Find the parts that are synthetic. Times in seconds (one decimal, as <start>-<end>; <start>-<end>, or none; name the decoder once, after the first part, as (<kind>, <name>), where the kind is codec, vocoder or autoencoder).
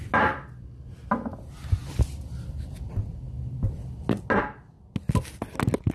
none